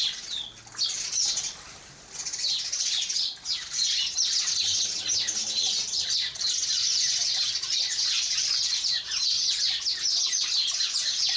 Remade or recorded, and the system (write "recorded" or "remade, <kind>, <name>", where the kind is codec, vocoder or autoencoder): recorded